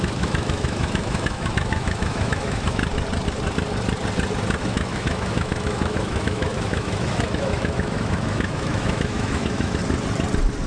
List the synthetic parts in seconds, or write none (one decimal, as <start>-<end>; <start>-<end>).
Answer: 0.0-2.8; 4.6-9.8